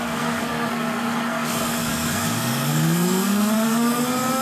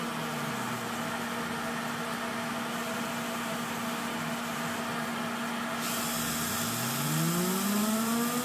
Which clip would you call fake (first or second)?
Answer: first